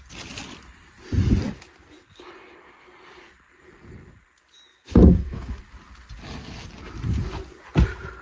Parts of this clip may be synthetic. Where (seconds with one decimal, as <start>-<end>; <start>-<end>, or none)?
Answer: 4.7-5.6